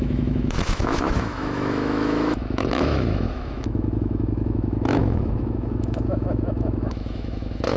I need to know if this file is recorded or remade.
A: remade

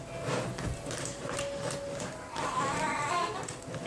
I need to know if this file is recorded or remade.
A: recorded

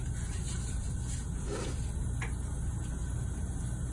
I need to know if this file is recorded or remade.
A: recorded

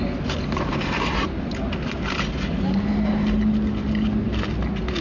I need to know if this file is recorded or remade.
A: recorded